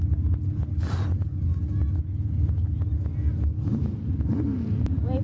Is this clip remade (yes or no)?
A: no